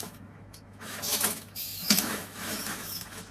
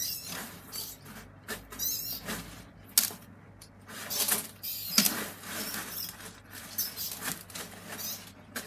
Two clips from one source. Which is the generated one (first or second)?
first